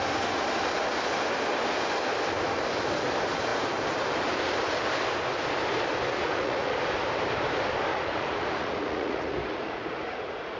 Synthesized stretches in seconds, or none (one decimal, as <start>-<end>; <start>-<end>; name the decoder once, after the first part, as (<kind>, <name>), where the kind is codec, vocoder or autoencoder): 6.1-6.8 (vocoder, Vocos); 7.9-10.6